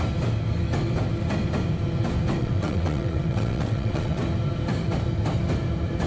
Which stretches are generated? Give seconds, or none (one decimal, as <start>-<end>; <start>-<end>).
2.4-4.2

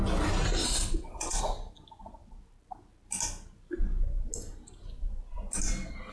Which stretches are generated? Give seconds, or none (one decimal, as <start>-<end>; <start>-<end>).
0.6-1.4

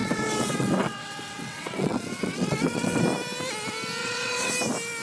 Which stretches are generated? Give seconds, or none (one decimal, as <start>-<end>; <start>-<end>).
0.0-3.0; 4.0-4.5

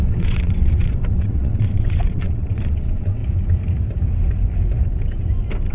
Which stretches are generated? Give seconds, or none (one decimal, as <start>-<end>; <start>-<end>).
0.0-3.2